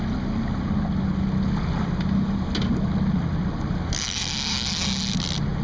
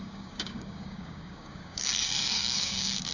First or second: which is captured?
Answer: first